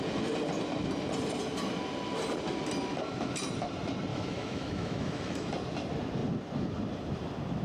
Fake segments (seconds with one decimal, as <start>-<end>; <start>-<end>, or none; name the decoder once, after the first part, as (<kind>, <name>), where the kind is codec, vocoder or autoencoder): 4.1-5.5 (autoencoder, DAC-VAE)